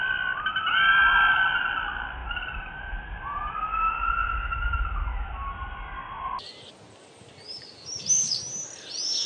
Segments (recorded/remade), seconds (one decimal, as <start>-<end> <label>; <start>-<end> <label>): 0.0-9.3 recorded